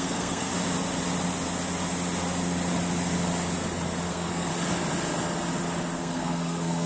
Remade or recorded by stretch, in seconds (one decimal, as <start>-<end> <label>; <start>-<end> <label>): 0.0-0.5 remade; 0.5-4.1 recorded; 4.1-4.5 remade; 4.5-6.0 recorded; 6.0-6.9 remade